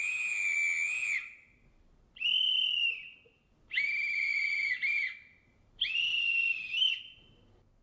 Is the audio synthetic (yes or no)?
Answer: no